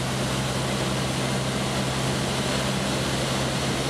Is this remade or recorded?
recorded